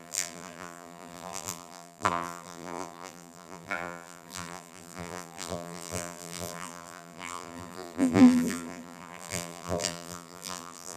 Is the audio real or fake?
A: fake